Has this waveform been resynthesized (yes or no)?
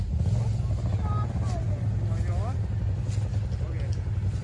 no